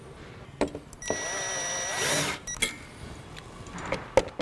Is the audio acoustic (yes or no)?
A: yes